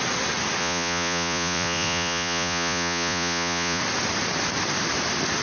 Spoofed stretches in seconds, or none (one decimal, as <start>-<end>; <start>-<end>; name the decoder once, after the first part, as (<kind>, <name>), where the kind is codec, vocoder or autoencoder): 0.6-3.8 (vocoder, Vocos)